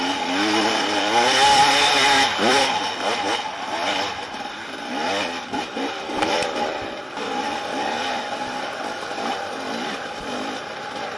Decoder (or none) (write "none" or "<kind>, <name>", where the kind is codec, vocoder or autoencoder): vocoder, BigVGAN v2